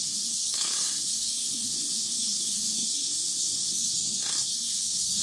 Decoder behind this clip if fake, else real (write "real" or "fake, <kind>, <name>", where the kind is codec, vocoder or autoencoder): fake, codec, SNAC